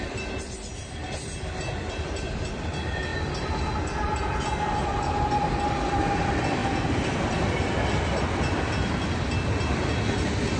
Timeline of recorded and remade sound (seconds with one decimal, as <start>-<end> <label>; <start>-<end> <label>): 0.0-0.7 recorded; 0.7-1.5 remade; 1.5-10.6 recorded